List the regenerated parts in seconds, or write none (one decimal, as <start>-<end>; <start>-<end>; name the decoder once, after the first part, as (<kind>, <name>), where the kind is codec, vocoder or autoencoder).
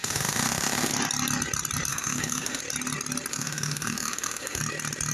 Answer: 0.0-0.9 (autoencoder, DAC-VAE); 1.9-2.6; 3.3-4.6